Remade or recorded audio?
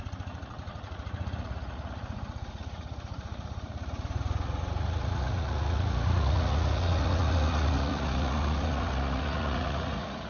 remade